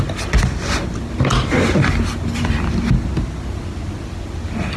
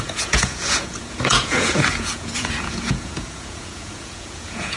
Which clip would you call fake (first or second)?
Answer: second